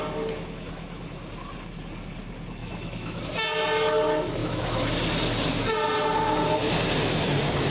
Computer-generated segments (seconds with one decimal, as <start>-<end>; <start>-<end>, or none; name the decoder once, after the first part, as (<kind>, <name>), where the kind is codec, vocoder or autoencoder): 2.6-3.2 (autoencoder, DAC-VAE); 4.4-4.9